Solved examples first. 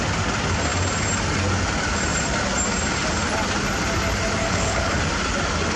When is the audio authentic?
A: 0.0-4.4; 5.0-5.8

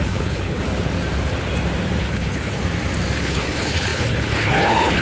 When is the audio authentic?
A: 0.6-2.0; 2.6-3.2